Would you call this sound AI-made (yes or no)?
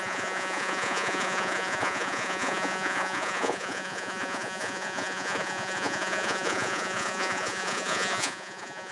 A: yes